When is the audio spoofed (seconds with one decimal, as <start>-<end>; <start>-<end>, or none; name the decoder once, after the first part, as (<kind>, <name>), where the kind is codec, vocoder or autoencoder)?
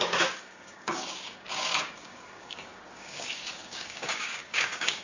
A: 0.0-5.0 (codec, DAC)